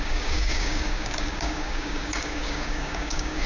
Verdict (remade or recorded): remade